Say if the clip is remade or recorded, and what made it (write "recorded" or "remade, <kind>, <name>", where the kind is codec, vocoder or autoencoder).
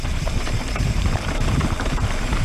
remade, vocoder, BigVGAN v2